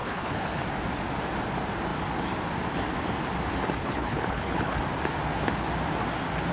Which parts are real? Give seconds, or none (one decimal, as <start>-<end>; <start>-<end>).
0.6-3.8; 4.8-6.5